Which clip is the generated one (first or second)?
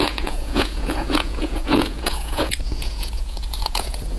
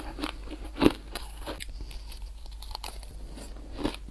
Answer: first